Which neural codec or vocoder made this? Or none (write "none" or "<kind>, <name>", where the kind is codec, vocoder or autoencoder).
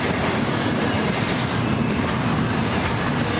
none